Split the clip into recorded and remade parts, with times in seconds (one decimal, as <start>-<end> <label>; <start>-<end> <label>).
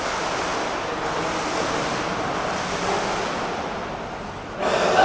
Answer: 0.0-5.0 recorded